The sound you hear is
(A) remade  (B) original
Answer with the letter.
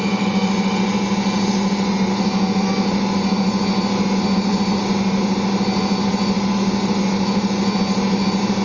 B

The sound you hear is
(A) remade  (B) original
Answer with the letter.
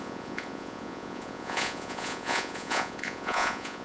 A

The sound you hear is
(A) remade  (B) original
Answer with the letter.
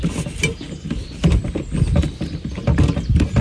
B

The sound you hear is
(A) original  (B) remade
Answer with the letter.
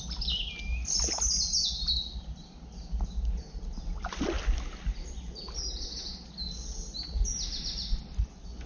A